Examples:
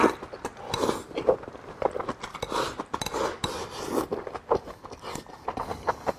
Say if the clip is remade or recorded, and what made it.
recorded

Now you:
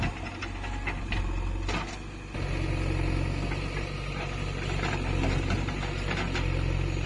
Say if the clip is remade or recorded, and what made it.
recorded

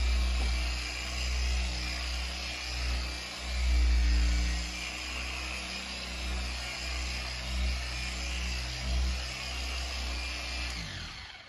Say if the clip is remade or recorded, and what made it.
recorded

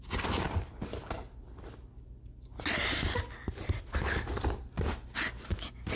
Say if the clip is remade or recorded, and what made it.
recorded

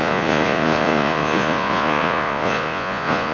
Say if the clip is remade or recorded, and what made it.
remade, vocoder, Vocos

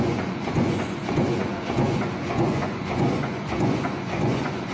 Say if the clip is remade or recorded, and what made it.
remade, vocoder, Vocos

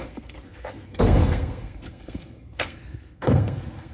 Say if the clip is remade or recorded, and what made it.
remade, codec, SNAC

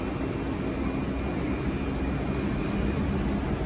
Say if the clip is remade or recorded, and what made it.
recorded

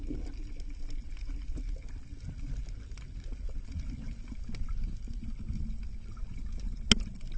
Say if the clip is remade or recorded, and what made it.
recorded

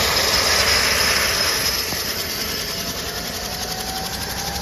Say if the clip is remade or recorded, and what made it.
recorded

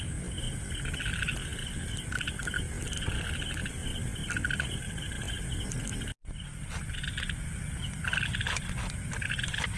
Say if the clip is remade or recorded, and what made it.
recorded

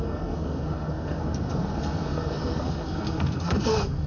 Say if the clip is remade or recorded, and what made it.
remade, codec, SNAC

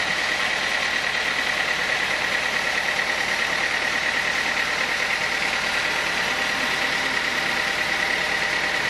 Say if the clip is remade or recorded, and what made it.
recorded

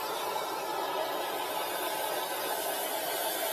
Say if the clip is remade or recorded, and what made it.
recorded